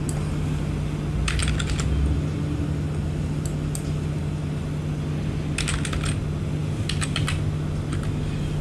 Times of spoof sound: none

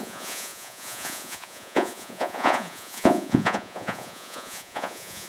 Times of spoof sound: 0.0-5.3 (vocoder, Vocos)